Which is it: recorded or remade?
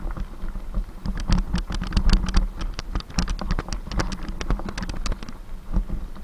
recorded